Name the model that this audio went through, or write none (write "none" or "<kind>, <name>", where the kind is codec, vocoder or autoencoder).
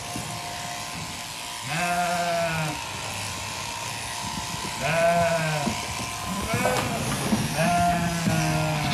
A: none